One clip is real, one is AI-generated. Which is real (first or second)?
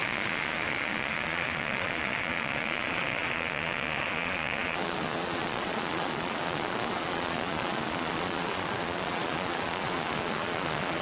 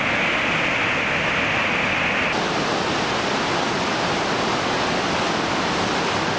second